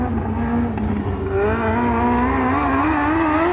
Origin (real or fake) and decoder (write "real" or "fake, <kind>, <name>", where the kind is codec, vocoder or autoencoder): real